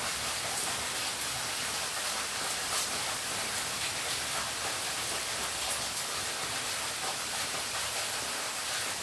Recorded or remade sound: remade